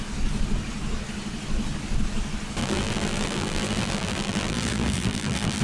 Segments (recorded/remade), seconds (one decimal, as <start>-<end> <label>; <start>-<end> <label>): 0.0-2.6 recorded; 2.6-5.6 remade